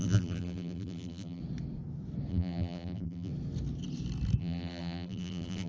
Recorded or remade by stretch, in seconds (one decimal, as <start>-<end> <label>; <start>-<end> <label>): 0.0-1.4 remade; 1.4-2.3 recorded; 2.3-3.3 remade; 3.3-4.4 recorded; 4.4-5.7 remade